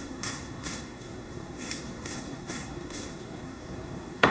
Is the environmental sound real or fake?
fake